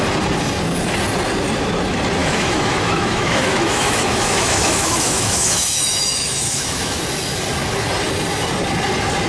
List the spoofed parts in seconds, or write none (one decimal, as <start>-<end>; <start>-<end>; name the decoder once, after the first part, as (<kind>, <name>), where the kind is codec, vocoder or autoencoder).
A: 2.2-7.0 (autoencoder, DAC-VAE)